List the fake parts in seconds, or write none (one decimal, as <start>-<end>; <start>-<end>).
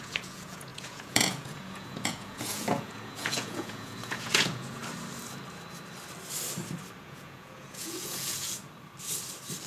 0.0-4.8; 7.0-8.6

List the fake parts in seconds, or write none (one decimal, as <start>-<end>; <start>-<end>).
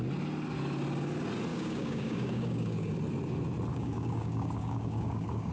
1.5-2.9; 3.7-5.5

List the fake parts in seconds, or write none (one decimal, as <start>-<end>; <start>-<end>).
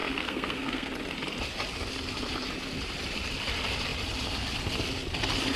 0.0-0.9